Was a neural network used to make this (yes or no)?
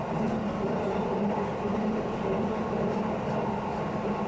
no